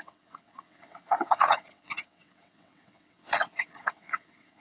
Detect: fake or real fake